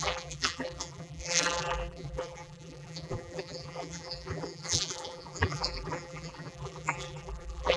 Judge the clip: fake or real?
fake